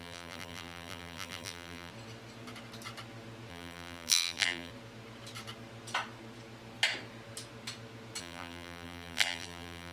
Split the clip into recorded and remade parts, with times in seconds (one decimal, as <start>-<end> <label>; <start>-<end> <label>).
0.0-1.9 remade; 1.9-3.5 recorded; 3.5-4.7 remade; 4.7-8.2 recorded; 8.2-9.9 remade